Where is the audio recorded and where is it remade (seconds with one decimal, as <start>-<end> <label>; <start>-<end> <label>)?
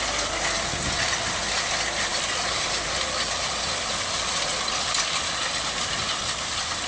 0.0-6.9 recorded